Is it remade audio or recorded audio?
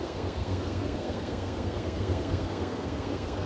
remade